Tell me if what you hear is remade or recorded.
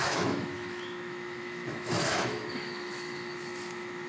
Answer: remade